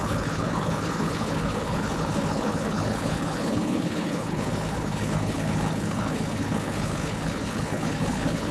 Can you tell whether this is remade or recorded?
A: remade